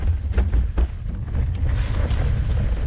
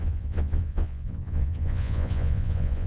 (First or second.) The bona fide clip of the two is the first